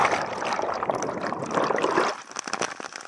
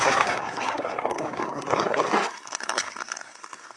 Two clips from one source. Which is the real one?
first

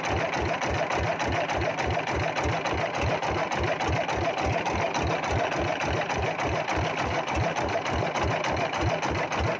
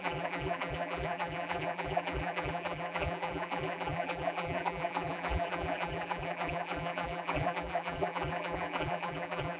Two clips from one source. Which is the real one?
first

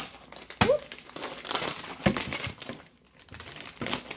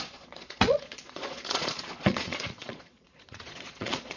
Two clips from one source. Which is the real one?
first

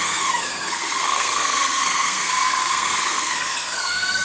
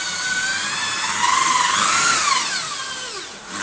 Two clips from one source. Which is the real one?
second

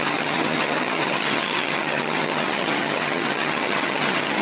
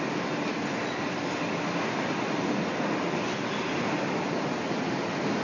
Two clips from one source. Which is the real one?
second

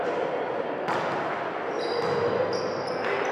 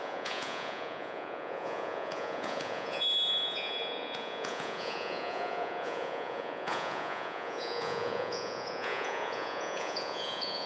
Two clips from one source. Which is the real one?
first